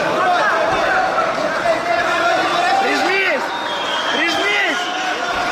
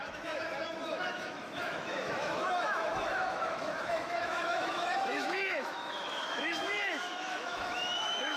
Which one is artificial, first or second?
second